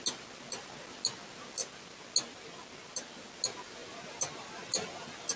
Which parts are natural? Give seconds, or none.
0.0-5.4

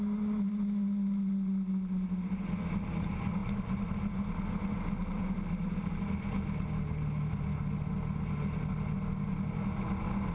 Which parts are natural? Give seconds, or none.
0.0-10.3

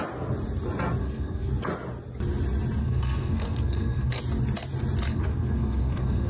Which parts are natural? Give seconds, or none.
0.0-1.0; 1.5-2.8; 4.2-5.1

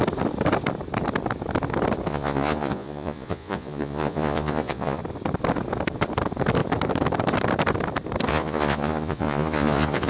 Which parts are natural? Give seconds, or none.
0.0-2.1; 5.0-8.3

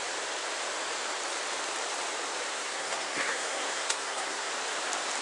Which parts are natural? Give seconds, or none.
0.0-2.5; 4.5-5.2

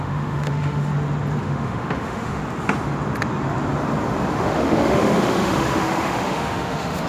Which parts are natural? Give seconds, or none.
0.9-1.4; 2.4-4.3